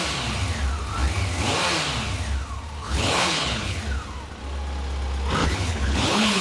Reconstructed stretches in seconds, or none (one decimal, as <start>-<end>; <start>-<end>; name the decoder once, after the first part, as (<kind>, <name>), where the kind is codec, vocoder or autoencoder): 2.8-3.8 (codec, HILCodec); 5.4-6.4